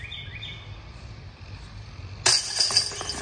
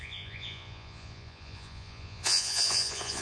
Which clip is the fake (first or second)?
second